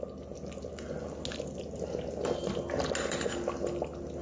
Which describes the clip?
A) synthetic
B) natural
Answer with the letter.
B